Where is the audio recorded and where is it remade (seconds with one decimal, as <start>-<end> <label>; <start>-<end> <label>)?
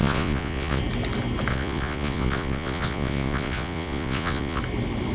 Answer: 0.0-0.8 remade; 0.8-1.5 recorded; 1.5-4.6 remade; 4.6-5.1 recorded